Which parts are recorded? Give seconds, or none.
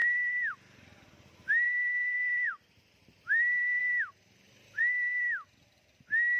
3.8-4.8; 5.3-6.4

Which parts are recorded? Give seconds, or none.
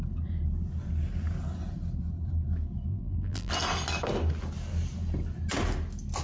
0.0-2.9; 3.5-6.2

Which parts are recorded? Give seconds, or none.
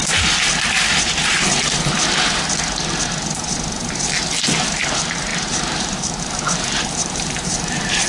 0.0-4.8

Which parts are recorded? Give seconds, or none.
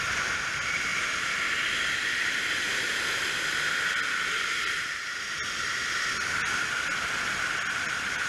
0.0-8.3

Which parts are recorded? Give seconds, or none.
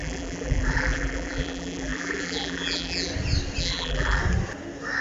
3.1-3.6; 4.2-5.0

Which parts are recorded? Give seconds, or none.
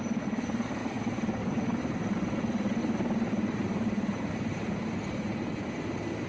0.0-0.8; 1.4-2.8; 4.7-6.3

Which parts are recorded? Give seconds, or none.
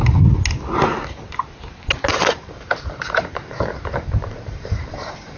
0.0-2.1